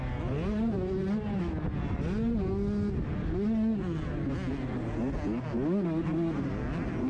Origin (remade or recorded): recorded